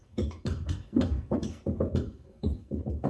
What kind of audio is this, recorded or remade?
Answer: remade